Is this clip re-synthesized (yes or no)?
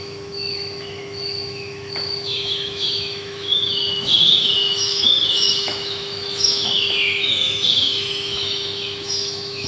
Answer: yes